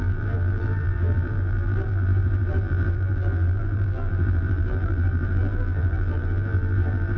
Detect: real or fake fake